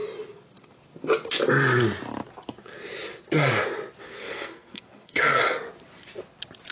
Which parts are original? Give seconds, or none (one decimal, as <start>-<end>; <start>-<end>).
0.0-4.0; 5.4-6.7